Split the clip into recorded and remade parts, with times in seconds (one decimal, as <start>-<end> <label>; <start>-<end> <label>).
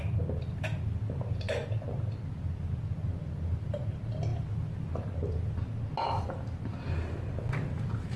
0.0-8.2 recorded